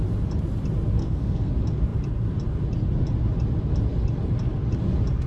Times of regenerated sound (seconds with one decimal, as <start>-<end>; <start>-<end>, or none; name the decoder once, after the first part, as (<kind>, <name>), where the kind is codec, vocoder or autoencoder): 1.0-1.5 (codec, SNAC)